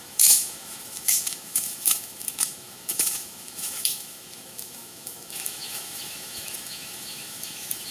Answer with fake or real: fake